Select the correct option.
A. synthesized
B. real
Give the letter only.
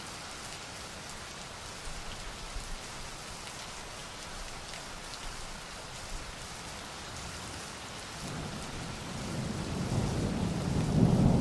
B